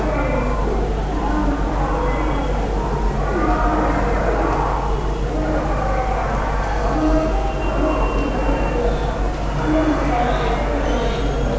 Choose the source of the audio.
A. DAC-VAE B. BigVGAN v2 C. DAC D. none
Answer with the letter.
D